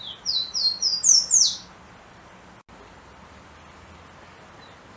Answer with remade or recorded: recorded